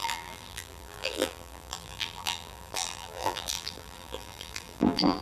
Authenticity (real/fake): fake